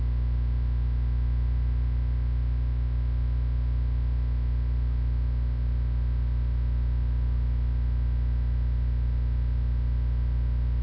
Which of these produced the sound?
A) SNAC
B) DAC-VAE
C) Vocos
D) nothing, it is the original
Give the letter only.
D